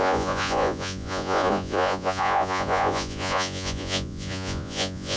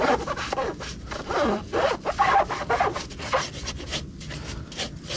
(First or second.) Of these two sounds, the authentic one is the second